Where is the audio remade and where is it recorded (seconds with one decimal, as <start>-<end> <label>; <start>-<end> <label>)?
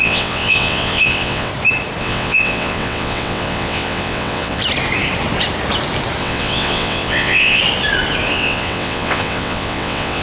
0.0-1.5 remade; 1.5-2.0 recorded; 2.0-4.6 remade; 4.6-6.2 recorded; 6.2-7.6 remade; 7.6-8.3 recorded; 8.3-10.2 remade